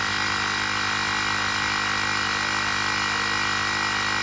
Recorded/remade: recorded